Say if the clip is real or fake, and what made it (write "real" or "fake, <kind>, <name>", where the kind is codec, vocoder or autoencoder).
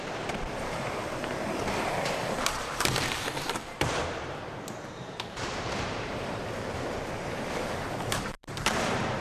fake, vocoder, BigVGAN v2